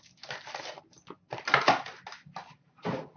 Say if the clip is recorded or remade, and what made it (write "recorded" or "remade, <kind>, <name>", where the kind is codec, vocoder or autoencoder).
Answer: recorded